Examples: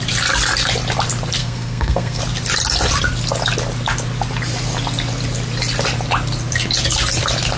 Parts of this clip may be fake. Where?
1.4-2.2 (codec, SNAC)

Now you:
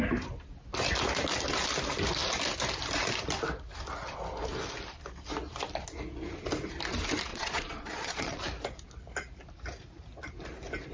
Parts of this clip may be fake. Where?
7.3-8.4 (vocoder, Vocos)

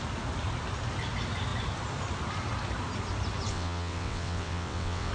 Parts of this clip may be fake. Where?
3.5-5.1 (vocoder, WaveNeXt)

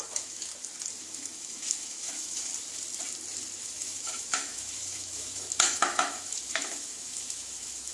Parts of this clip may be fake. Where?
0.0-0.5 (autoencoder, DAC-VAE); 1.0-2.5; 3.6-7.9

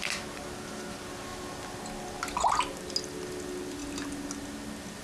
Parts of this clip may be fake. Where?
none

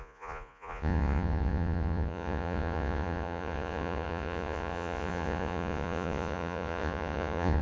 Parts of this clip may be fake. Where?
0.0-7.6 (vocoder, Vocos)